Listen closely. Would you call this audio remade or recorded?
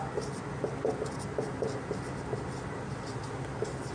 recorded